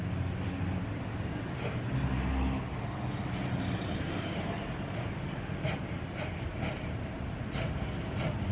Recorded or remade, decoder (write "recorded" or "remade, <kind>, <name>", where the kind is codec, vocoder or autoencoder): recorded